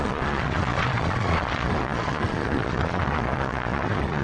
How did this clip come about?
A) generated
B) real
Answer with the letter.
A